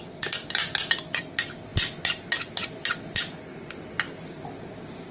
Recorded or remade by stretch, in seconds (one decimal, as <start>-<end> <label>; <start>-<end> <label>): 0.0-5.1 recorded